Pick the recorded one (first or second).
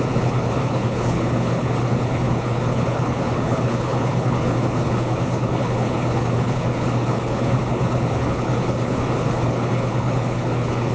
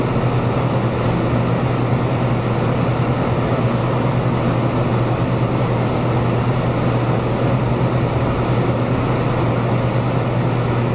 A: second